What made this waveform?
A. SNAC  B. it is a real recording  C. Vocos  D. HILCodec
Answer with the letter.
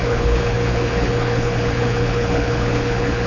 D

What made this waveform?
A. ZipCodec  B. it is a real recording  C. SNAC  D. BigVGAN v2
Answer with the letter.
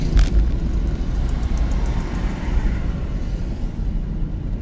D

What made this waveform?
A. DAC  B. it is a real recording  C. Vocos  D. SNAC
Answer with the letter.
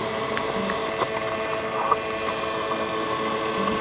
B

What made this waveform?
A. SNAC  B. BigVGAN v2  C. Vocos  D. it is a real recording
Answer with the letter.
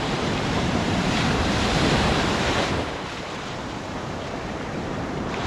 B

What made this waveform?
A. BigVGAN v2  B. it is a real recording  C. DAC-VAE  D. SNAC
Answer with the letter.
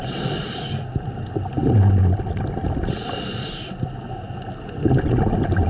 B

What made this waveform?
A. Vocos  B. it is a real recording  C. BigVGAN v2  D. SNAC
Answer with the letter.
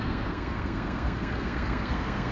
D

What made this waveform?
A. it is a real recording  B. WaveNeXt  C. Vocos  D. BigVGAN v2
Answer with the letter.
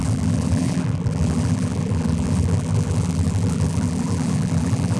D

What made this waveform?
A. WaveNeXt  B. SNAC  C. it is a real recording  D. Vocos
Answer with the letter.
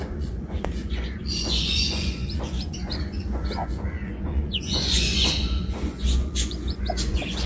D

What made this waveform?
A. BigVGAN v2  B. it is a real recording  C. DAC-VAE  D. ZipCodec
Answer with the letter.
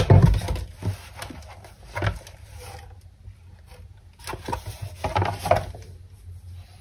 B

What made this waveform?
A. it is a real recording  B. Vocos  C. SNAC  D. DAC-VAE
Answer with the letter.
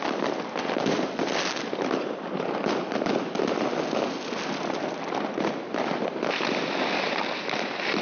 A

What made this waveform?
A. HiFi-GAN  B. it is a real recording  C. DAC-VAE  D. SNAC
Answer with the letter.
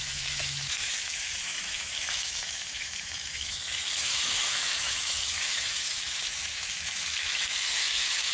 C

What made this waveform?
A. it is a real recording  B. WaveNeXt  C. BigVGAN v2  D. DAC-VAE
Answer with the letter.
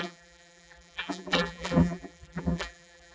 C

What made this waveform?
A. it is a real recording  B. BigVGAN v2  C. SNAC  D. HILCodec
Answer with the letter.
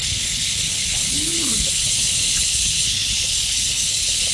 D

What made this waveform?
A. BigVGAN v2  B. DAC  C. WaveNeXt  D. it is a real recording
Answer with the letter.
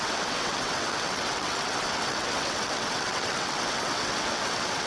C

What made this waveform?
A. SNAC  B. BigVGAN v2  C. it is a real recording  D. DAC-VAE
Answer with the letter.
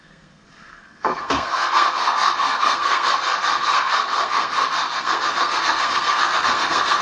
A